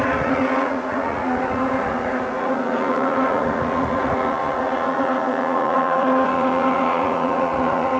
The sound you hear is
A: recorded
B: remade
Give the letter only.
B